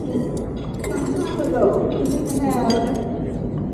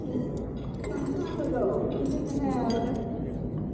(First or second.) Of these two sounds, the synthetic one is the first